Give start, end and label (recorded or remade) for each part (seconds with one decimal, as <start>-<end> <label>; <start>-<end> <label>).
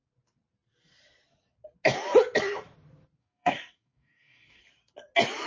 0.0-3.2 recorded; 3.2-4.6 remade; 4.6-5.5 recorded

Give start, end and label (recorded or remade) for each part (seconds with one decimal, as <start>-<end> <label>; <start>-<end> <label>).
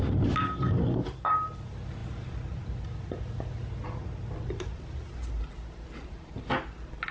0.0-7.1 recorded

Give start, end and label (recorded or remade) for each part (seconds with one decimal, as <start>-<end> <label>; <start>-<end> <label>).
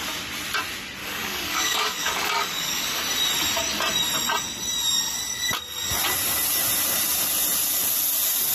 0.0-1.0 recorded; 1.0-3.0 remade; 3.0-8.5 recorded